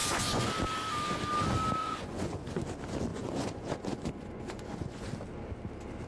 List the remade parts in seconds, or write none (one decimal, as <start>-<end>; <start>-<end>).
0.0-0.5; 1.8-2.5; 3.1-5.1